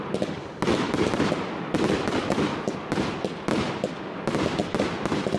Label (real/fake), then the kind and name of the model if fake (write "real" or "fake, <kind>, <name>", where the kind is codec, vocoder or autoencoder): real